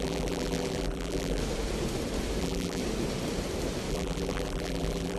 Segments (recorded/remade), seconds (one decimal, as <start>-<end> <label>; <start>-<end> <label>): 0.0-1.4 remade; 1.4-2.4 recorded; 2.4-2.8 remade; 2.8-3.9 recorded; 3.9-5.2 remade